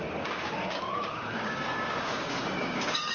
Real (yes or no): no